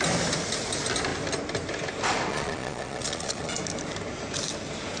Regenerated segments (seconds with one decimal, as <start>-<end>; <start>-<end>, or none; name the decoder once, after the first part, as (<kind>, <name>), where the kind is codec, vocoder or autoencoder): 2.3-3.6 (vocoder, Vocos)